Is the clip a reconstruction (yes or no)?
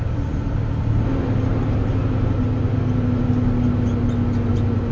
no